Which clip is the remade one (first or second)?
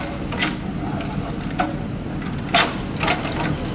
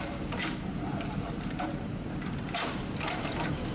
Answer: second